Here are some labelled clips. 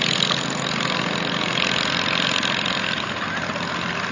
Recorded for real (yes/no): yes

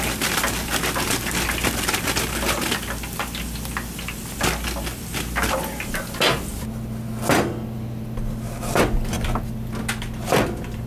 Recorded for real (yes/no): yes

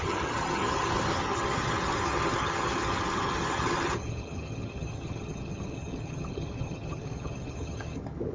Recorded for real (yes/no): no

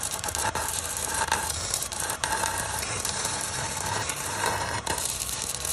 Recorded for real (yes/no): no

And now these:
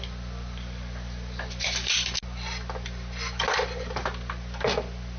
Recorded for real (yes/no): yes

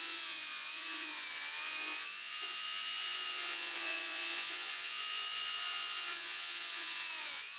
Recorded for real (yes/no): no